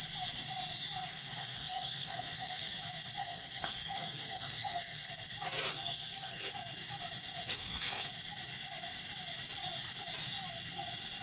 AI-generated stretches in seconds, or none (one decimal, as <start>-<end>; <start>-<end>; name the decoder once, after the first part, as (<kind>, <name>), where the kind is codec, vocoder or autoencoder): 1.1-2.7 (codec, SNAC); 3.2-5.1; 5.7-6.5; 7.4-8.1